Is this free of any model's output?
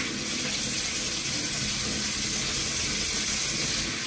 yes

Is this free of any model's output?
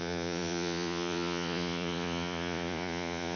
no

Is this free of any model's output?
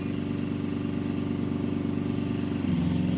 yes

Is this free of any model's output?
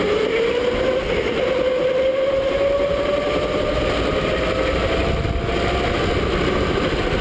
yes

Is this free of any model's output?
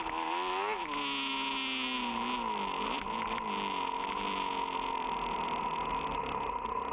yes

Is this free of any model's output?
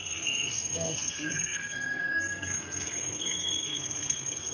no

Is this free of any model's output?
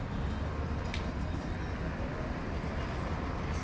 yes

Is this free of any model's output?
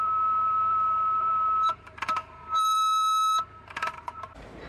no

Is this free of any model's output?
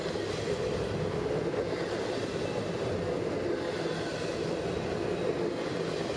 yes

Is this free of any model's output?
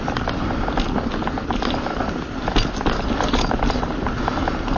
yes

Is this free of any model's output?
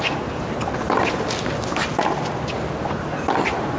yes